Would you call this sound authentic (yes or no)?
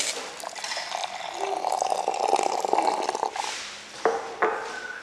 yes